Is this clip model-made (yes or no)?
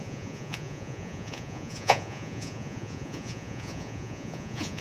yes